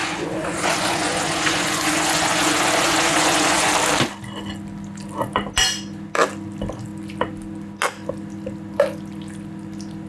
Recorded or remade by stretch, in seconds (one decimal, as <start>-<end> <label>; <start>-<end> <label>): 0.0-3.7 remade; 3.7-10.1 recorded